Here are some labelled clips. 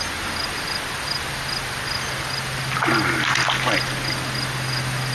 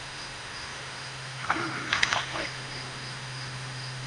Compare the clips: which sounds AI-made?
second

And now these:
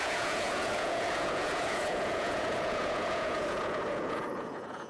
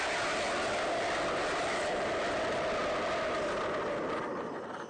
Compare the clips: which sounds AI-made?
first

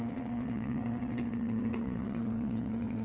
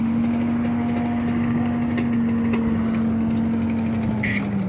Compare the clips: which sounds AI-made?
first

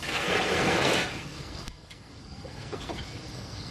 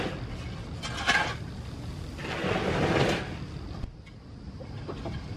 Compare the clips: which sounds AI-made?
first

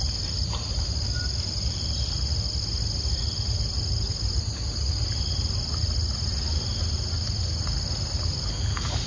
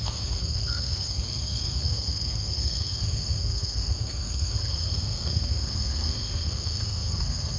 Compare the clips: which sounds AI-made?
second